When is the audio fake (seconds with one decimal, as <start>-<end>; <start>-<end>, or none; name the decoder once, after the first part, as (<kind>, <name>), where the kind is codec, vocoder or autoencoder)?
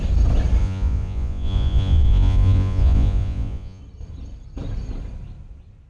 0.6-3.8 (vocoder, Vocos)